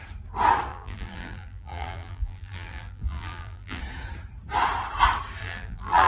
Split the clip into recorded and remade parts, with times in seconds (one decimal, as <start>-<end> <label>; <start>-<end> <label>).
0.0-0.7 recorded; 0.7-3.8 remade; 3.8-5.4 recorded; 5.4-6.1 remade